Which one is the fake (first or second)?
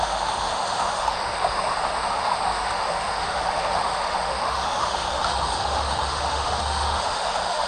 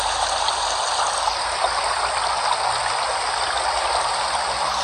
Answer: first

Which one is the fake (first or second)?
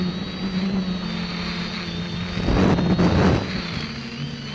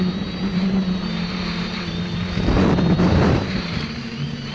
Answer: second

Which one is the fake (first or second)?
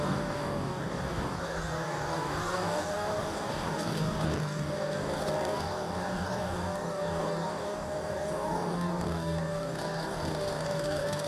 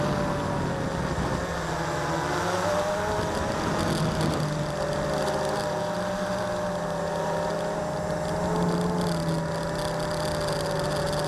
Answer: first